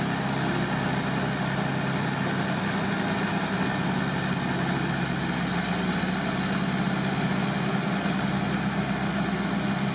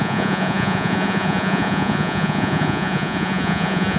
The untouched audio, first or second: first